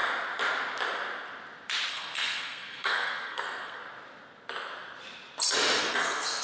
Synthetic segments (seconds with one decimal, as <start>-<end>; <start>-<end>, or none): 1.9-3.8; 5.8-6.4